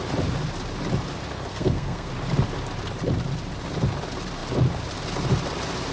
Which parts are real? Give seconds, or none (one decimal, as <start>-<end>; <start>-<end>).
0.0-1.5; 2.1-5.9